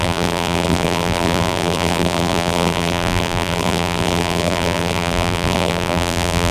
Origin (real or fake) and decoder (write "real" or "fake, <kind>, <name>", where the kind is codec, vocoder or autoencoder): fake, vocoder, BigVGAN v2